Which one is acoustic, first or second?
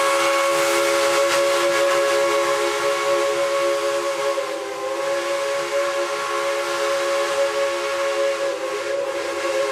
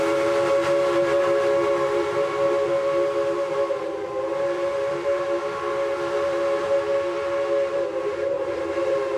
first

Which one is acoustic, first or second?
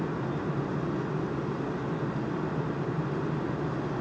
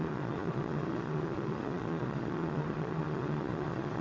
first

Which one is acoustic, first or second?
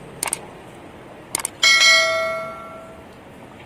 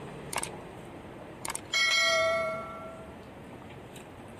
first